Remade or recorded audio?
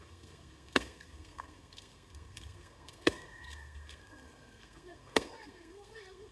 remade